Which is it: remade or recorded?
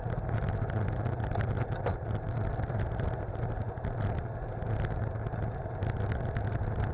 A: recorded